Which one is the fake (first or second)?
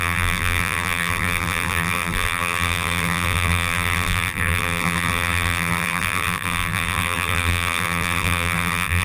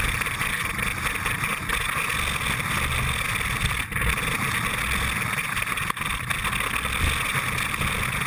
first